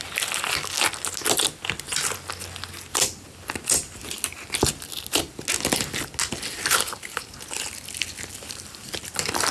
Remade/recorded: recorded